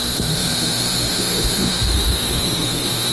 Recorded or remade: remade